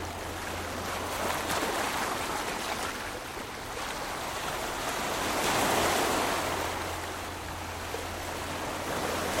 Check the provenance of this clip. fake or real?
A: real